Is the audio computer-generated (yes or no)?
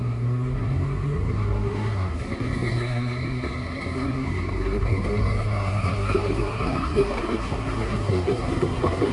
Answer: yes